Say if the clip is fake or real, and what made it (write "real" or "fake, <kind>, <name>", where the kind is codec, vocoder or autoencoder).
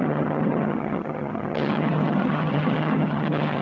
fake, vocoder, HiFi-GAN